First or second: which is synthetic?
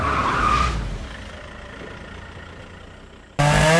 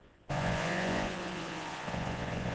second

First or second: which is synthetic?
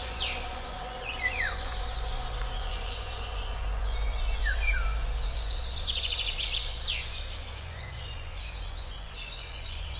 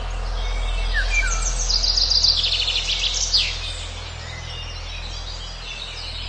first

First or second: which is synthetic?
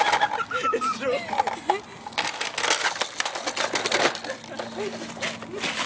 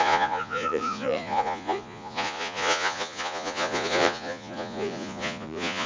second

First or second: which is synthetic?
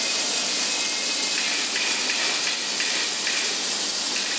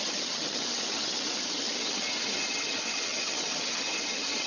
second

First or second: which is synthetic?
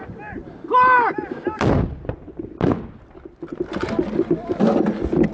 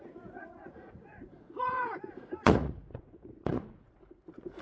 second